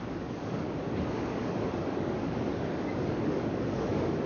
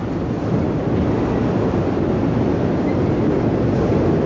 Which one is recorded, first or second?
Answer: second